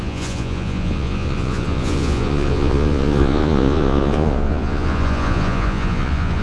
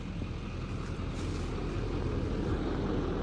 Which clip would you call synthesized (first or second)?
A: first